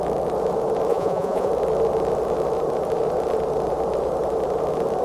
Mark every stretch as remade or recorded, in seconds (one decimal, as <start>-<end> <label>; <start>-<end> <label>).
0.0-0.9 recorded; 0.9-1.5 remade; 1.5-5.0 recorded